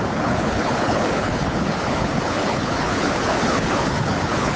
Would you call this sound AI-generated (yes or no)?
yes